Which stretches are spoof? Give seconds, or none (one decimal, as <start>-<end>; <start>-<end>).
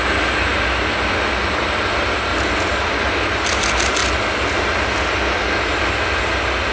none